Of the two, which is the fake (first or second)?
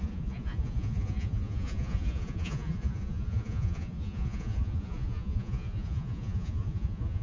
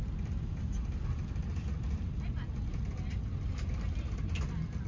first